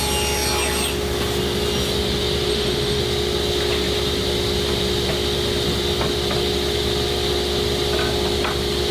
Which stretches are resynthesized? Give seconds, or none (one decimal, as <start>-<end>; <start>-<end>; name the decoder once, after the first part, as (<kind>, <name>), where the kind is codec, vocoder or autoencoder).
2.5-3.0 (autoencoder, DAC-VAE)